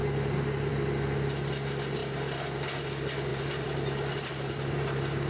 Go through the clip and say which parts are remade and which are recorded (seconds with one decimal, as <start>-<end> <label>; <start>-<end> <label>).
0.0-0.7 remade; 0.7-3.3 recorded; 3.3-5.3 remade